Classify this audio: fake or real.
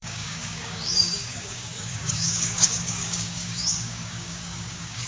fake